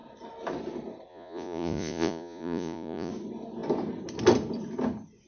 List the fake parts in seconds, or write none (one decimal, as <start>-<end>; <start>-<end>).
1.1-3.1